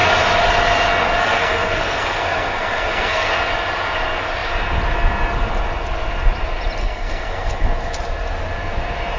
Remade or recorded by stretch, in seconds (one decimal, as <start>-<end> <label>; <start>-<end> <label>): 0.0-1.2 recorded; 1.2-3.3 remade; 3.3-6.8 recorded; 6.8-7.6 remade; 7.6-9.2 recorded